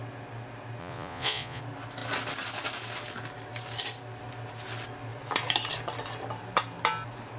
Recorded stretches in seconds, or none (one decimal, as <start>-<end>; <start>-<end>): 0.0-0.8; 1.6-7.4